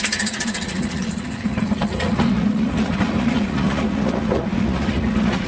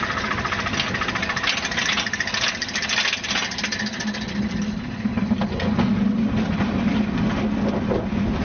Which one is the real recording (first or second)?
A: second